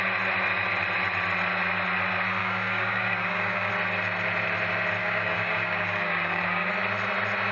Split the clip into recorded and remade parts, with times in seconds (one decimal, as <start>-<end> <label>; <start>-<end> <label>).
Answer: 0.0-2.4 recorded; 2.4-3.7 remade; 3.7-5.0 recorded; 5.0-6.7 remade; 6.7-7.5 recorded